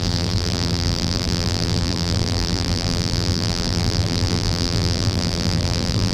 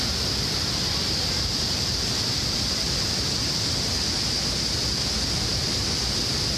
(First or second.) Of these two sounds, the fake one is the first